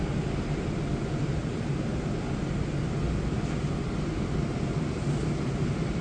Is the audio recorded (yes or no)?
yes